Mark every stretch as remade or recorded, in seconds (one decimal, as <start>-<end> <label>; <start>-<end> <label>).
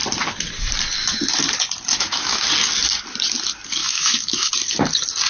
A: 0.0-1.9 recorded; 1.9-2.5 remade; 2.5-3.8 recorded; 3.8-4.5 remade; 4.5-5.3 recorded